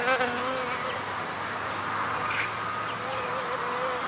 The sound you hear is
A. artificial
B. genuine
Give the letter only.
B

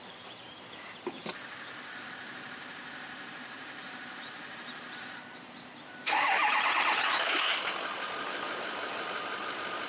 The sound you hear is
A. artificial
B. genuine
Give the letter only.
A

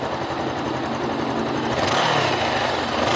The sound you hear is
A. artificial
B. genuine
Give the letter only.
B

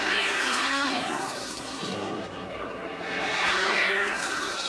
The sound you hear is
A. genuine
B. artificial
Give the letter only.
B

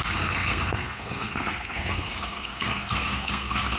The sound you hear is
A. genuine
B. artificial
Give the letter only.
B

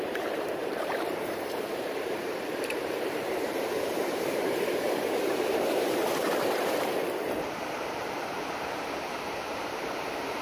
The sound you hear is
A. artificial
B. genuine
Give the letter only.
A